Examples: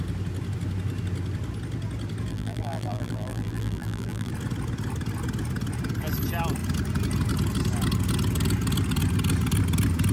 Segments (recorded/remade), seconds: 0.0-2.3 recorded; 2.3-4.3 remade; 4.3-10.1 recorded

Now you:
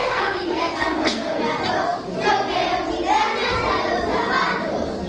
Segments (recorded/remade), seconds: 0.0-1.4 remade; 1.4-5.1 recorded

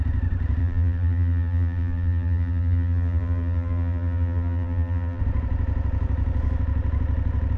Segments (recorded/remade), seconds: 0.0-0.6 recorded; 0.6-5.2 remade; 5.2-7.6 recorded

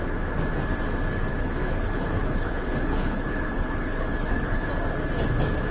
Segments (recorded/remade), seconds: 0.0-1.3 recorded; 1.3-4.7 remade; 4.7-5.7 recorded

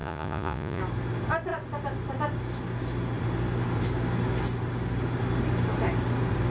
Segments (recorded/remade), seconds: 0.0-0.8 remade; 0.8-6.5 recorded

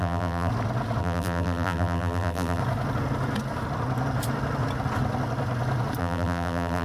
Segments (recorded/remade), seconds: 0.0-0.5 remade; 0.5-1.0 recorded; 1.0-2.6 remade; 2.6-6.0 recorded; 6.0-6.8 remade